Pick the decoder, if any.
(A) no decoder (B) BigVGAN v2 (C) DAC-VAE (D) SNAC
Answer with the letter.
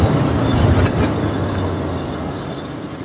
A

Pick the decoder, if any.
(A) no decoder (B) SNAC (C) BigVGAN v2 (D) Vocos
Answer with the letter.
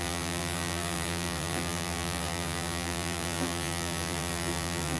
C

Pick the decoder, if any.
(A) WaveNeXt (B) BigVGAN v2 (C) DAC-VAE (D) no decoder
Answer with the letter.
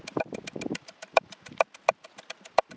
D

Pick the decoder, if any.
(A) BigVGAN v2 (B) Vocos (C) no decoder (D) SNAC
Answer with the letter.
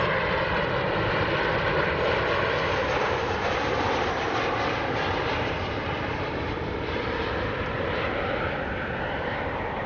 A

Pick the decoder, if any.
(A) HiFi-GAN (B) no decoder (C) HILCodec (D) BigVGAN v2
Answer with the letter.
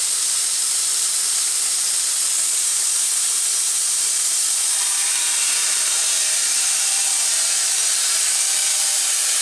D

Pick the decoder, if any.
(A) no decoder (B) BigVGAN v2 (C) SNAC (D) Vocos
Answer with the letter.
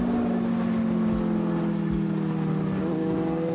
A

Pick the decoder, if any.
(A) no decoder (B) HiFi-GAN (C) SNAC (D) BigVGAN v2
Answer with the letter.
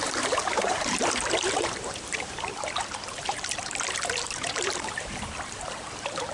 D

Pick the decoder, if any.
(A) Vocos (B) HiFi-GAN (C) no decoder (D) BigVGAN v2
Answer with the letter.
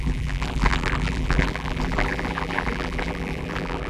D